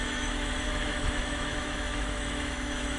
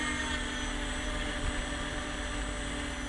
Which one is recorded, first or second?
second